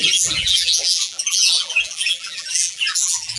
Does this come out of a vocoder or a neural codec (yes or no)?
yes